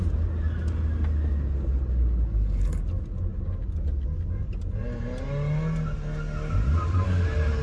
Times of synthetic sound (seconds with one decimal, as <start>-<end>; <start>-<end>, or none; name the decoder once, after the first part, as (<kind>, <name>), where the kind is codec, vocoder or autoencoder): none